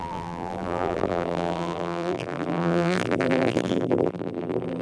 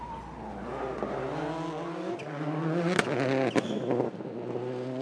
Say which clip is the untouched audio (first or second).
second